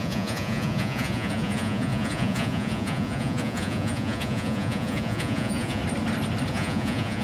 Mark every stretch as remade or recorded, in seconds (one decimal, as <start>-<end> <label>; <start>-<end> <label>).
0.0-5.8 remade; 5.8-6.5 recorded; 6.5-7.2 remade